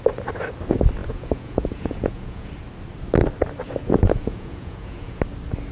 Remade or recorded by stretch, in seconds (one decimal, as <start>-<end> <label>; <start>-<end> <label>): 0.0-1.0 recorded; 1.0-2.5 remade; 2.5-3.8 recorded; 3.8-5.2 remade; 5.2-5.7 recorded